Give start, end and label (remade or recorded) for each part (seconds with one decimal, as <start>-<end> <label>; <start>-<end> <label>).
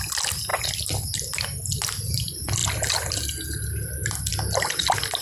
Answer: 0.0-5.2 recorded